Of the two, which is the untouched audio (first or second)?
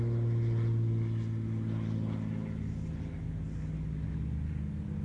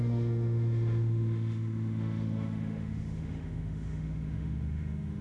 first